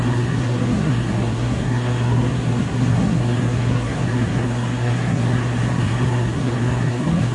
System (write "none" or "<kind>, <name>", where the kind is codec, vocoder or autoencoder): codec, SNAC